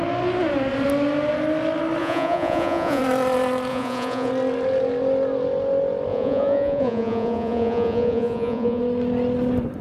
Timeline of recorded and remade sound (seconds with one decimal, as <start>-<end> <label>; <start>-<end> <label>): 0.0-2.0 recorded; 2.0-3.0 remade; 3.0-3.7 recorded; 3.7-4.3 remade; 4.3-6.1 recorded; 6.1-8.8 remade; 8.8-9.8 recorded